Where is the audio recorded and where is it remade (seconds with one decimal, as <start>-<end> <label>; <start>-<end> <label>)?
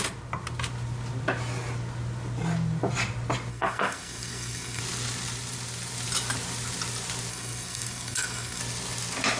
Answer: 0.0-3.5 recorded; 3.5-4.8 remade; 4.8-7.3 recorded; 7.3-8.6 remade; 8.6-9.4 recorded